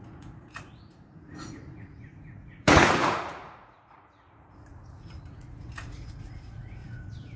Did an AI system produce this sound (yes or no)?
yes